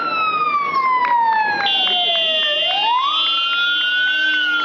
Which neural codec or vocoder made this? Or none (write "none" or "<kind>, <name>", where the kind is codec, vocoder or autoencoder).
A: none